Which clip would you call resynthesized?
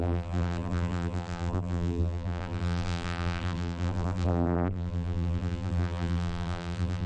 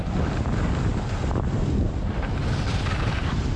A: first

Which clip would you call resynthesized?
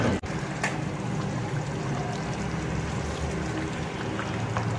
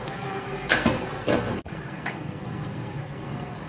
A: second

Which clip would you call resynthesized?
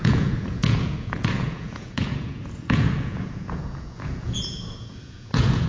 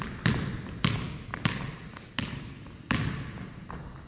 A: first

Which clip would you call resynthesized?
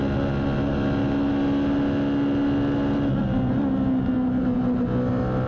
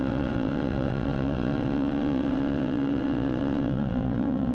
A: second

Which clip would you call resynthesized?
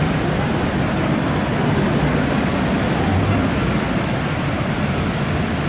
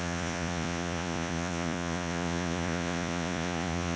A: second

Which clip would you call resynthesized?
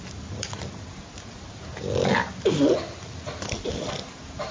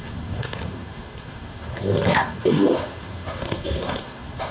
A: second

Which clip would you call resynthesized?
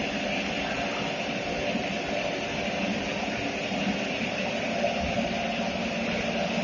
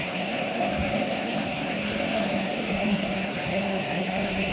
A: second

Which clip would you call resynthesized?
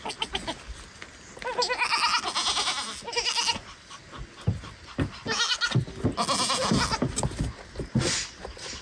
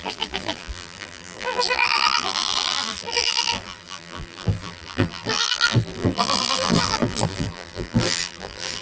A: second